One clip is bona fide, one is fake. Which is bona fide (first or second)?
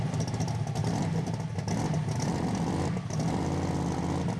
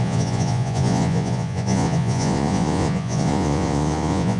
first